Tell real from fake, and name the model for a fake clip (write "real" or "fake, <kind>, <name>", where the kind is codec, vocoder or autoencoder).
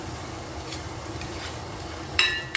fake, vocoder, BigVGAN v2